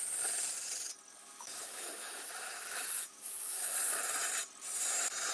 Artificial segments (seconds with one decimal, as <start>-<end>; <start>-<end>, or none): 1.2-3.7